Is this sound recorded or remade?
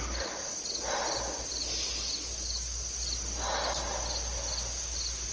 recorded